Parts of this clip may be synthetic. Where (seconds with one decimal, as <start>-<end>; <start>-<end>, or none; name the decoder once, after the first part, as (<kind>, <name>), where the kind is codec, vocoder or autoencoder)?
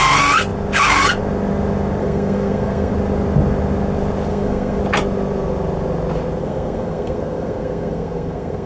2.0-2.9 (codec, SNAC); 4.3-4.8; 6.4-8.7